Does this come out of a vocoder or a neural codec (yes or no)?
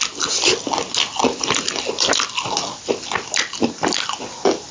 no